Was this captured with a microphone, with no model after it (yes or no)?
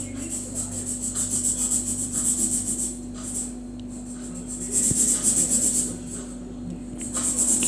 yes